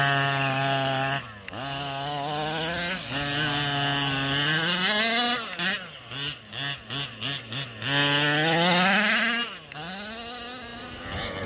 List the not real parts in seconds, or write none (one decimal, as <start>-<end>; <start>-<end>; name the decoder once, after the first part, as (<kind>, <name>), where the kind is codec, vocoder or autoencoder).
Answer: none